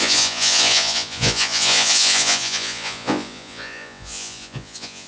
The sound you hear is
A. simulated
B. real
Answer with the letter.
A